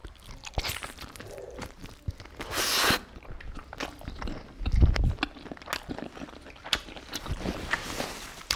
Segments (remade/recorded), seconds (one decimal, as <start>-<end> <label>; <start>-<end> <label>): 0.0-0.8 recorded; 0.8-1.8 remade; 1.8-6.6 recorded; 6.6-8.6 remade